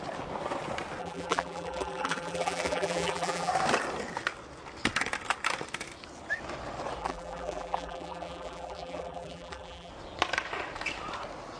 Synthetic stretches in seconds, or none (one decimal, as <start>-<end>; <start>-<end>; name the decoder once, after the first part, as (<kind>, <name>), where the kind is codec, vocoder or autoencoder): 1.0-3.5 (vocoder, BigVGAN v2); 7.0-9.9